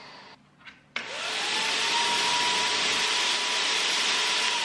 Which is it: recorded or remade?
recorded